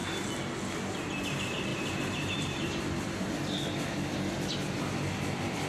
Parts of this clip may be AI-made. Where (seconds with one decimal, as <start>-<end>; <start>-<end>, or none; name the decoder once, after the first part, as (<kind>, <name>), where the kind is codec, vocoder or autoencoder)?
1.7-2.7 (vocoder, BigVGAN v2)